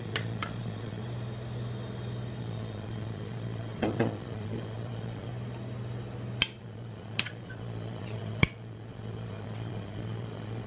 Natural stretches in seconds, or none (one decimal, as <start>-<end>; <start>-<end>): 1.0-2.4; 5.3-6.6